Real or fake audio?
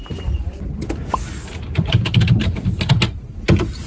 real